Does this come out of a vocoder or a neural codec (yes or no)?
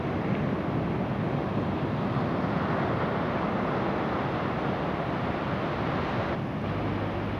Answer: no